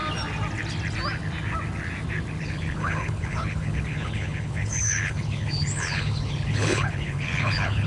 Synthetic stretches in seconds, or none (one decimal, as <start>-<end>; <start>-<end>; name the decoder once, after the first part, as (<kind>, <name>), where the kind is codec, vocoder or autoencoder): 2.4-7.9 (codec, HILCodec)